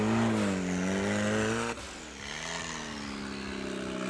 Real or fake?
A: real